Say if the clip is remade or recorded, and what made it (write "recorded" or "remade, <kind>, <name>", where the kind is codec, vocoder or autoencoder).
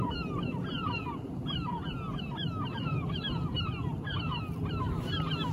recorded